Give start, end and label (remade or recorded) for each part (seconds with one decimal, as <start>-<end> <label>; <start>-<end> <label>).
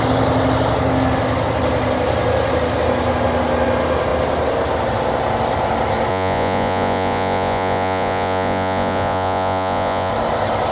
0.0-6.1 recorded; 6.1-10.1 remade; 10.1-10.7 recorded